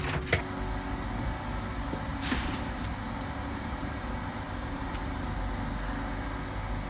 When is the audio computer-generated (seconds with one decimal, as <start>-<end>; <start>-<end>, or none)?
2.1-5.2